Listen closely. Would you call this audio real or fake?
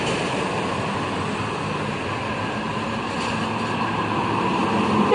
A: real